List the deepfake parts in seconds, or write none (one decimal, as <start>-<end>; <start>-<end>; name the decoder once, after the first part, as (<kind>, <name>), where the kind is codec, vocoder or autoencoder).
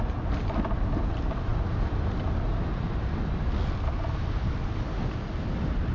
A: none